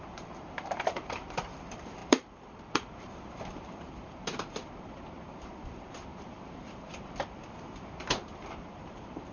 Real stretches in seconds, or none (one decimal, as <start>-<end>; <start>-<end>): none